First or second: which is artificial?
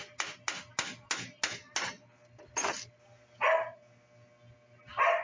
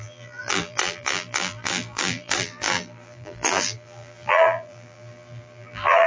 second